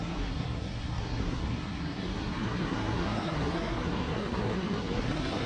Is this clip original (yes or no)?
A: no